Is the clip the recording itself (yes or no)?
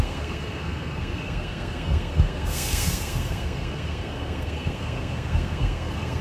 no